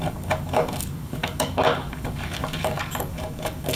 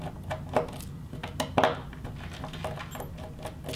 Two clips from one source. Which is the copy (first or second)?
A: first